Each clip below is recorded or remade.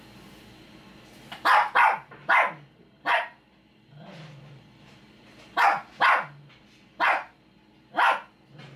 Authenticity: recorded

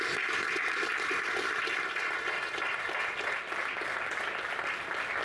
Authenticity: recorded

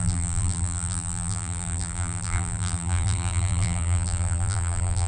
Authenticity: remade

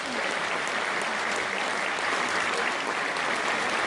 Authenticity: recorded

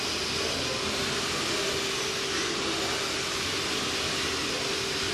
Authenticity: recorded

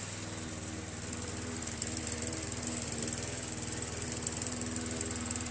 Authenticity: recorded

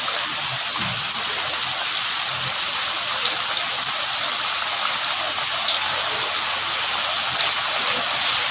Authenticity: recorded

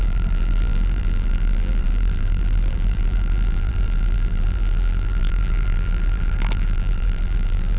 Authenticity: remade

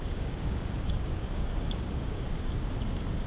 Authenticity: remade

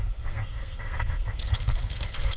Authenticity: remade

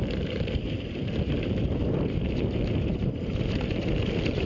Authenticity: remade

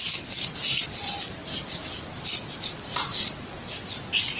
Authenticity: recorded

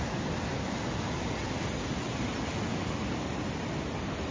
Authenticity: recorded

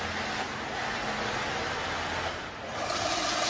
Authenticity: recorded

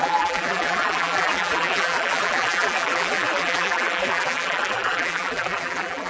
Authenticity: remade